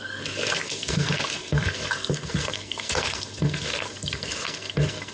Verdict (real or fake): fake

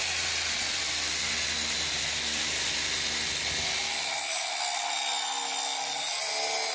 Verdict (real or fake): real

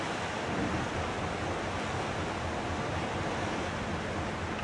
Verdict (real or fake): real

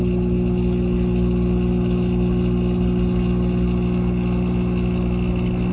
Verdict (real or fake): real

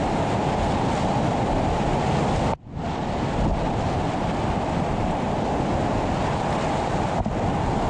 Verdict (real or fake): real